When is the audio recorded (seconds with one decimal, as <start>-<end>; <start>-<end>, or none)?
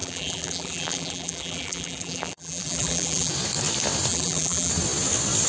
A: 3.3-4.1; 4.7-5.5